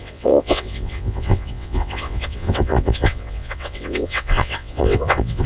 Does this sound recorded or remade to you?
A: remade